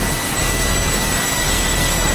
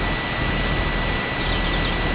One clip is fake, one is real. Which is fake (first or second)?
first